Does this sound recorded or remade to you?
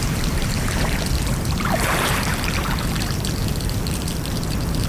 remade